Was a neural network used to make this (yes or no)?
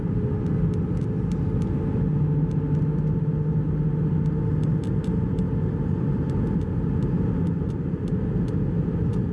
no